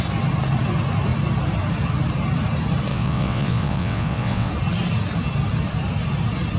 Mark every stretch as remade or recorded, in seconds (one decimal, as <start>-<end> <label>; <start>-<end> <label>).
0.0-2.9 recorded; 2.9-4.5 remade; 4.5-6.6 recorded